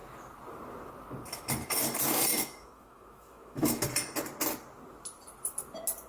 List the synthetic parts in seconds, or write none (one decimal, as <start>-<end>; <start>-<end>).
2.3-3.8